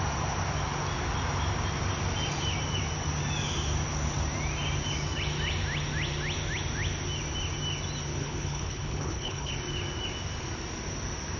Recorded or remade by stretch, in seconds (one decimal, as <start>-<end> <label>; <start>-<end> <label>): 0.0-8.2 recorded; 8.2-9.5 remade; 9.5-11.4 recorded